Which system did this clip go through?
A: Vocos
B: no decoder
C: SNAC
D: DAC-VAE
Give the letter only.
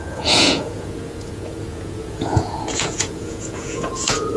A